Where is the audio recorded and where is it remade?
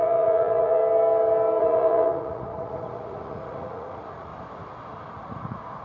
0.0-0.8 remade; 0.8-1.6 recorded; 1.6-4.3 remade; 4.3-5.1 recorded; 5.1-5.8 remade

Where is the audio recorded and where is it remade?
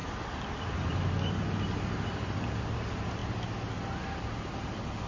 0.0-5.1 recorded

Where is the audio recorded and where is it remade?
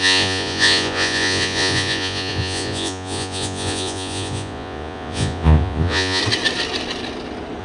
0.0-6.2 remade; 6.2-7.6 recorded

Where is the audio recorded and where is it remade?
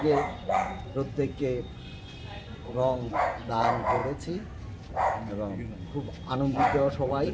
0.0-4.0 remade; 4.0-6.3 recorded; 6.3-7.3 remade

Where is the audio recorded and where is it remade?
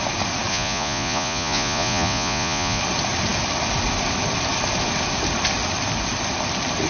0.0-0.5 recorded; 0.5-2.8 remade; 2.8-6.9 recorded